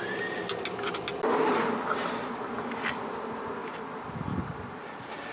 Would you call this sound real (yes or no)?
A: yes